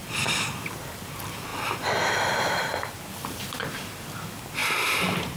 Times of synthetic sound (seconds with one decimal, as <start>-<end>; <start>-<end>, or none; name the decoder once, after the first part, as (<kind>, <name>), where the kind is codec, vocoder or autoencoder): 0.0-0.7 (vocoder, BigVGAN v2); 1.5-4.0